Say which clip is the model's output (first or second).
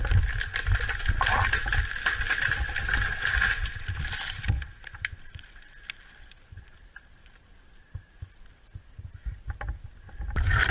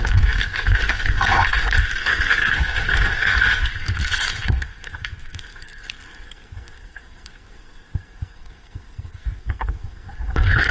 second